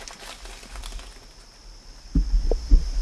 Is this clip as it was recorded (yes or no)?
yes